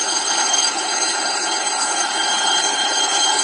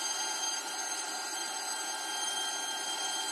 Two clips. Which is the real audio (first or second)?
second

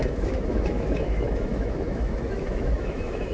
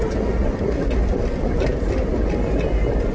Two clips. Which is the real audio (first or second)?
second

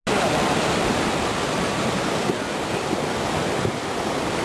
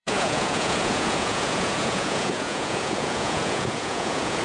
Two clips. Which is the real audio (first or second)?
first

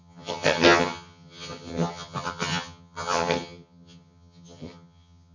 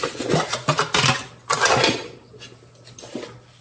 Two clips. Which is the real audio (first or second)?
second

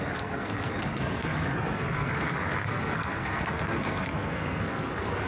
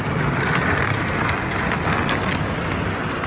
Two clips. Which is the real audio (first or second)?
second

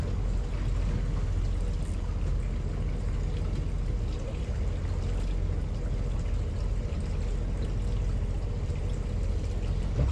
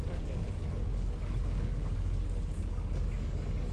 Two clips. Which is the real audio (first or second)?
first